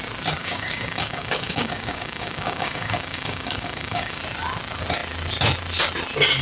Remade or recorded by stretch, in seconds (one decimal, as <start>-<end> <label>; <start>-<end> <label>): 0.0-0.4 recorded; 0.4-4.2 remade; 4.2-6.4 recorded